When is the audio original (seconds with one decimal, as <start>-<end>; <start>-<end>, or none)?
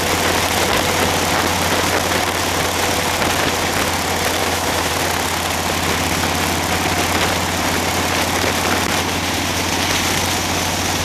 0.0-4.4; 4.9-11.0